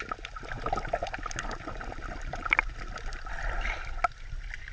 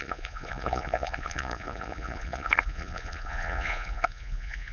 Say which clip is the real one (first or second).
first